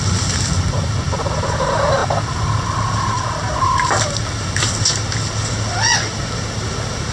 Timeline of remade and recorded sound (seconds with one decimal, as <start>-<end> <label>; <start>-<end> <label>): 0.0-7.1 recorded